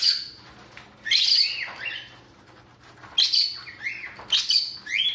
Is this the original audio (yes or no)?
yes